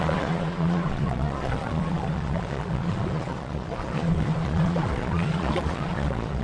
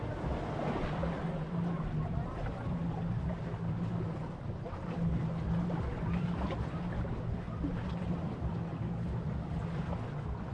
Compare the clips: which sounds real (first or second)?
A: second